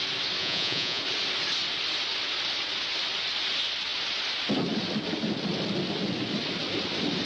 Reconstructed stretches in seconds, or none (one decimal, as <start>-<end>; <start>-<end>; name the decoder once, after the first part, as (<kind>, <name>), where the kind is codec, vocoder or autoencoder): 0.4-1.0 (vocoder, Vocos)